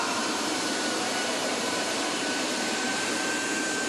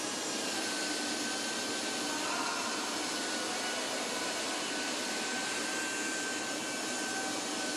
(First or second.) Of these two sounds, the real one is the second